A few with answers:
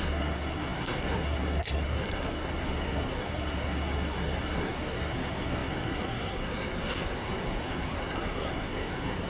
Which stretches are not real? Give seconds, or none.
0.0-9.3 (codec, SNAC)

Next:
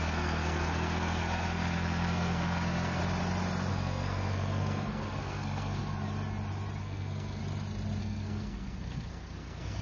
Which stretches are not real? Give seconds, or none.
0.0-3.0 (codec, SNAC); 3.7-5.8; 6.8-7.4; 8.0-9.8

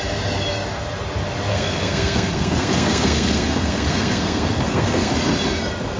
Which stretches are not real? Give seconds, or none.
1.5-5.1 (codec, SNAC)

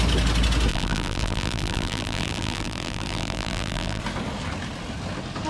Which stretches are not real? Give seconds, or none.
0.7-4.0 (vocoder, BigVGAN v2)

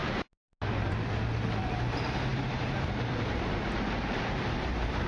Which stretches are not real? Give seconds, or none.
0.7-5.1 (vocoder, BigVGAN v2)

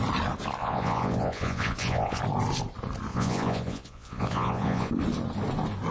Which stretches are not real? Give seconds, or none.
0.6-2.2 (vocoder, Vocos); 3.1-4.9